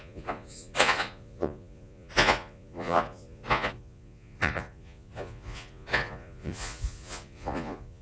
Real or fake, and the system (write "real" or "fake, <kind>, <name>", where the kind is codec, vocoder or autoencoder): fake, vocoder, Vocos